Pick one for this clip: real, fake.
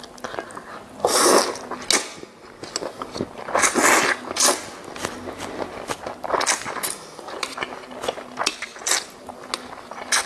real